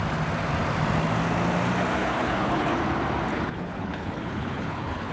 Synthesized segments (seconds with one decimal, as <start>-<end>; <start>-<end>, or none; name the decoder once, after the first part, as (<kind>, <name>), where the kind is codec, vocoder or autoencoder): 2.0-2.8 (codec, HILCodec); 3.3-5.1